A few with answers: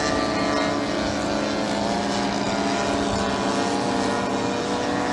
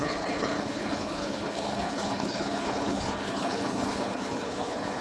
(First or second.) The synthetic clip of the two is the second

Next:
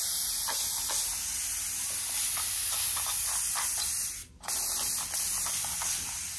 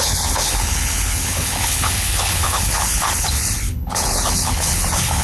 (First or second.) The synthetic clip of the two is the second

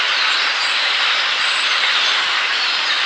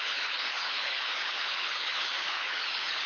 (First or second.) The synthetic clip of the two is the second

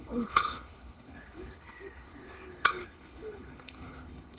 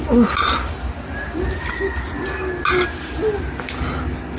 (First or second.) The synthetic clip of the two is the first